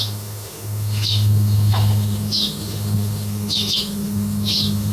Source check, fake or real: fake